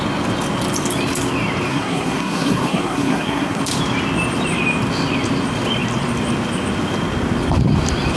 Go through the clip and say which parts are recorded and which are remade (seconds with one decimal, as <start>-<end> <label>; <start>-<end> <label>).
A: 0.0-1.7 recorded; 1.7-3.6 remade; 3.6-8.2 recorded